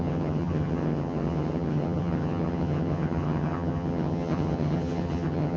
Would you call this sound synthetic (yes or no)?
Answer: yes